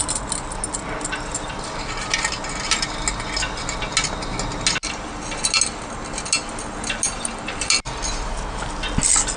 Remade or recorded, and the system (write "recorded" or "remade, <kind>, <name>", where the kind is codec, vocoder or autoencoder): recorded